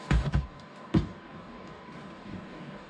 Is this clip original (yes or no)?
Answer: no